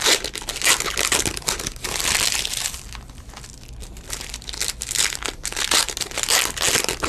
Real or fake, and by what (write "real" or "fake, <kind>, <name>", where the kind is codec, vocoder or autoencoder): real